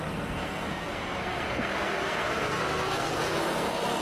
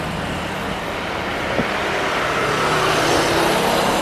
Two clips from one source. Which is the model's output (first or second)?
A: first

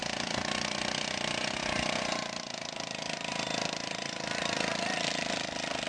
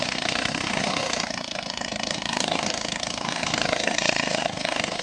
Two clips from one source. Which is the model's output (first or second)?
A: second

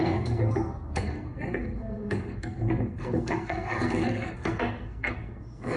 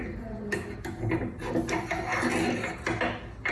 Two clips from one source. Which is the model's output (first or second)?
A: first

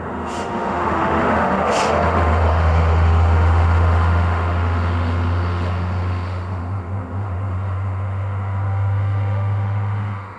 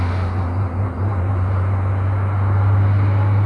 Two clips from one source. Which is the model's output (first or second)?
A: first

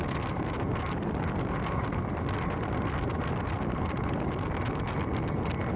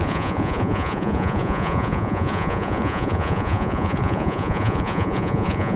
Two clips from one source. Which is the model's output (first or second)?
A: second